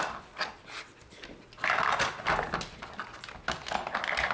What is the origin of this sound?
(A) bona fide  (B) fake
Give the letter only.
A